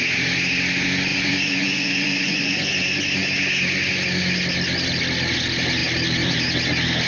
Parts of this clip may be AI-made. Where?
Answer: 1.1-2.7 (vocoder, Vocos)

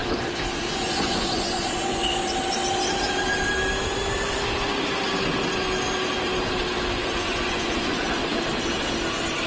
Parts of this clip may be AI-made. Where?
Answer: 0.6-2.0 (vocoder, Vocos); 6.9-8.2

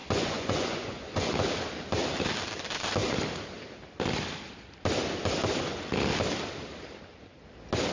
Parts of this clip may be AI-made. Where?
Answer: 0.0-1.3 (vocoder, Vocos)

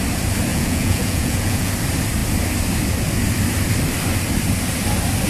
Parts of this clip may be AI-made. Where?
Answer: 0.5-1.7 (vocoder, Vocos)

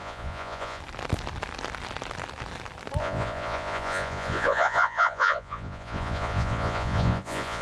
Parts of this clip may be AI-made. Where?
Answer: 0.0-0.8 (vocoder, Vocos); 3.0-7.6

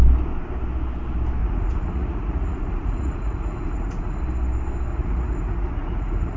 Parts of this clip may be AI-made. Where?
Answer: 1.4-4.2 (vocoder, Vocos); 4.9-6.4